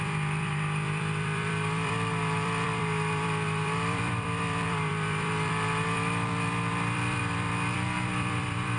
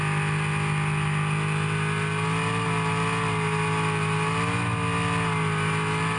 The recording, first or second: second